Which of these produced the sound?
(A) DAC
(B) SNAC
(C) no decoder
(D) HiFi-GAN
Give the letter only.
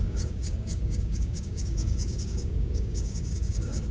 A